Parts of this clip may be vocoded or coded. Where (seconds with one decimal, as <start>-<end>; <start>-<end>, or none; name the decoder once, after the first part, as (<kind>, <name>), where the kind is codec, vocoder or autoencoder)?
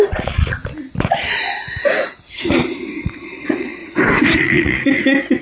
0.0-0.6 (vocoder, Vocos); 3.0-3.8; 4.4-5.4